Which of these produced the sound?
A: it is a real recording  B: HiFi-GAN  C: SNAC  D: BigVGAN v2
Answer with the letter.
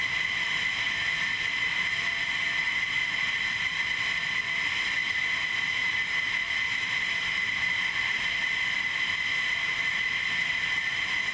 A